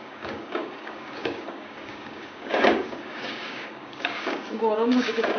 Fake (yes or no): yes